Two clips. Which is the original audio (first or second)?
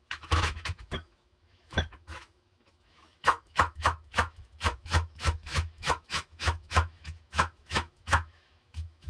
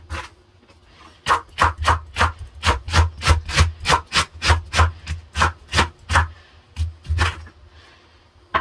second